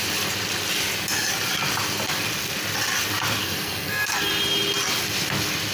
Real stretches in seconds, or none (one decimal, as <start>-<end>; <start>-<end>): 0.0-3.4; 4.3-5.7